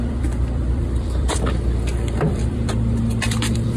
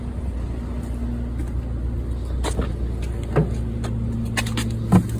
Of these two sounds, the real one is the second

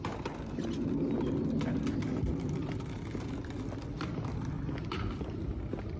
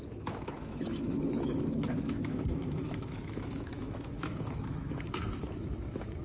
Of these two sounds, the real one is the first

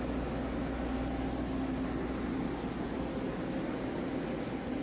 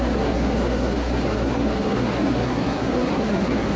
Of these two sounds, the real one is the first